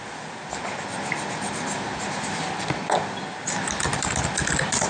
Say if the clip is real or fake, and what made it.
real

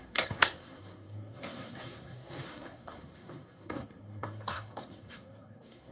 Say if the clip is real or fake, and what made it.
fake, codec, SNAC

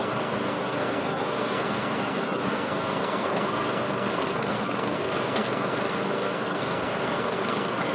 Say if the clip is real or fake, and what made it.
fake, codec, SNAC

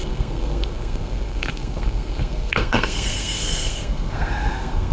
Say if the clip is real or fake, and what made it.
fake, codec, SNAC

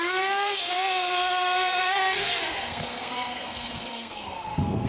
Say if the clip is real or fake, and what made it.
fake, codec, SNAC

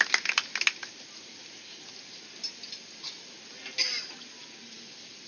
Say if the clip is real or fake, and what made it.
real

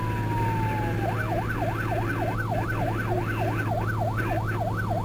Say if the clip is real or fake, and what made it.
real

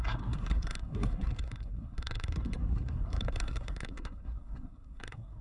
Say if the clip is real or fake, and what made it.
fake, codec, SNAC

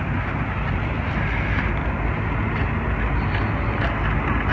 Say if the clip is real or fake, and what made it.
real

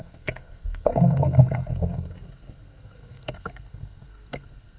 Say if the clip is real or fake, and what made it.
fake, codec, SNAC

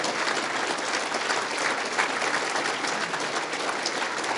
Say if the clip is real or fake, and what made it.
real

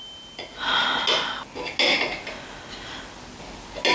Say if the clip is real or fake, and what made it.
real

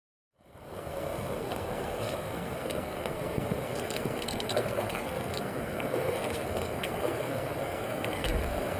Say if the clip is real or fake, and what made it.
fake, codec, SNAC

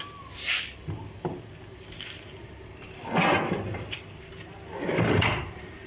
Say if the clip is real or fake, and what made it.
real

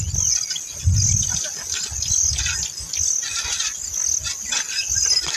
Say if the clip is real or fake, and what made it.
real